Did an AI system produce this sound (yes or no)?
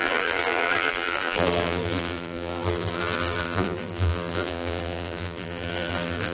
yes